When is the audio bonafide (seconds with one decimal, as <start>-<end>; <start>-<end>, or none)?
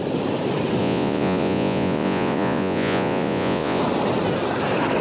0.0-0.8; 3.8-5.0